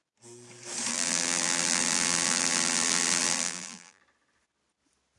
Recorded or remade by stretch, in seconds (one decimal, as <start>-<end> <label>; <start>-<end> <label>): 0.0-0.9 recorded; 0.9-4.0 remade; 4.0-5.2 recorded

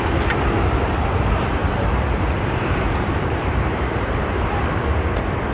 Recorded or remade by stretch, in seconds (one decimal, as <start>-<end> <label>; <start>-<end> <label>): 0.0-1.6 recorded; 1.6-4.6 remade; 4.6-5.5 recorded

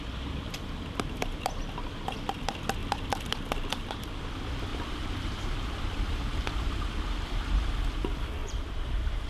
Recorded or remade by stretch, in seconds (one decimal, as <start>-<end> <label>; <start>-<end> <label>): 0.0-4.7 recorded; 4.7-5.8 remade; 5.8-8.4 recorded; 8.4-9.3 remade

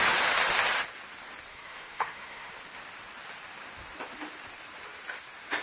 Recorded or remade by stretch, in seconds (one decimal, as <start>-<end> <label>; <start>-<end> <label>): 0.0-1.5 recorded; 1.5-2.5 remade; 2.5-5.6 recorded